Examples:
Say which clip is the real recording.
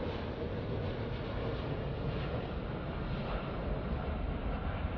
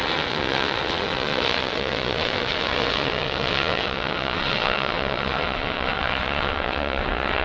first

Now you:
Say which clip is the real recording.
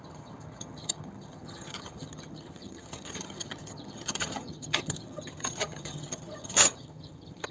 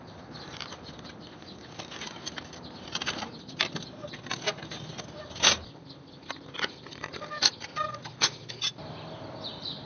second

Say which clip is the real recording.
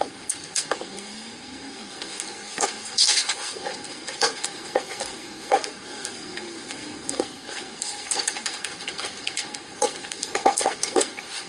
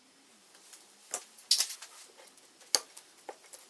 second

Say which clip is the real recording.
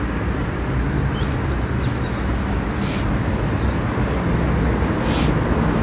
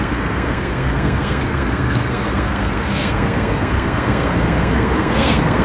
first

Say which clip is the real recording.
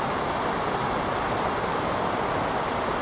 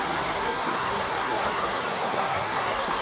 first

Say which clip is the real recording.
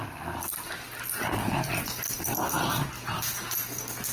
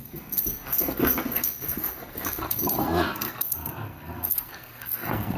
first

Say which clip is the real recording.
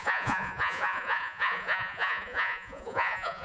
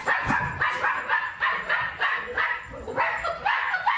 second